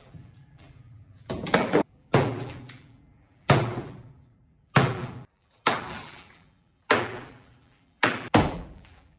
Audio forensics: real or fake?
fake